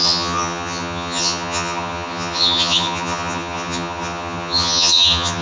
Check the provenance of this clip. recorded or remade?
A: remade